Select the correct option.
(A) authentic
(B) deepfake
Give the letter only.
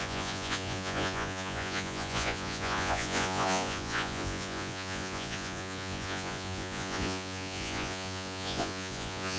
B